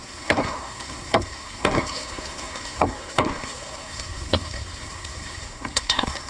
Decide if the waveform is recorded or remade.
remade